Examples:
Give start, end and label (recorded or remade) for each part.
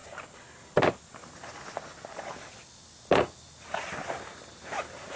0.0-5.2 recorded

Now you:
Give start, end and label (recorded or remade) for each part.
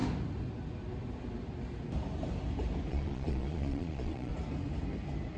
0.0-2.9 recorded; 2.9-4.3 remade; 4.3-5.4 recorded